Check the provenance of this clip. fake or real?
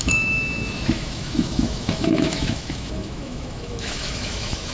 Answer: fake